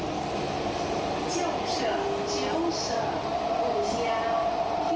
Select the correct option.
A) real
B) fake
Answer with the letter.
A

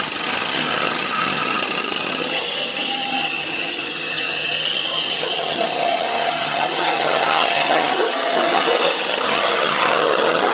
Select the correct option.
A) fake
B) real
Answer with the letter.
A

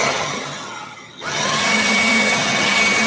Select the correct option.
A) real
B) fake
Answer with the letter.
B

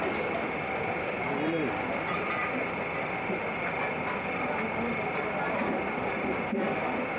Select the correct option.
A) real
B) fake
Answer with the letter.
A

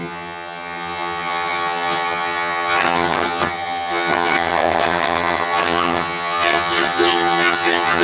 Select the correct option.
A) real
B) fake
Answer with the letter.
B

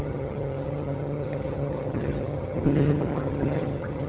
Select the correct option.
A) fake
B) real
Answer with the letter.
A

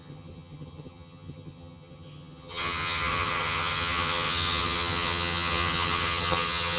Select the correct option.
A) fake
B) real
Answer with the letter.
A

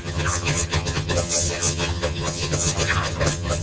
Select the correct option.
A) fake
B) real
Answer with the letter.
A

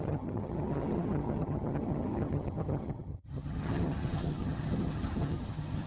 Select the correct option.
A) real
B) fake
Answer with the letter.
B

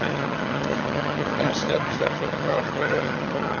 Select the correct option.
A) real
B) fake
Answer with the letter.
B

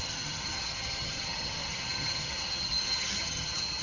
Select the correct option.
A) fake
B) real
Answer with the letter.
A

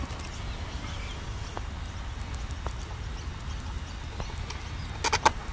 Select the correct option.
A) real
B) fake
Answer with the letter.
A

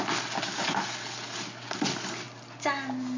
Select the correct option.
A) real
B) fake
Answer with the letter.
A